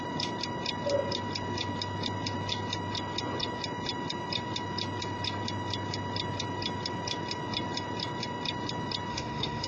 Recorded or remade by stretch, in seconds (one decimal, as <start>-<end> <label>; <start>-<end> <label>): 0.0-9.1 recorded; 9.1-9.7 remade